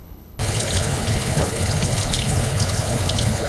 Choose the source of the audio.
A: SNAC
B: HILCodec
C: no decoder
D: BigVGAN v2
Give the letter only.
B